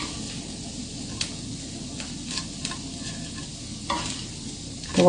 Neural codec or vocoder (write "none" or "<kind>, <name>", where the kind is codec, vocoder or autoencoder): none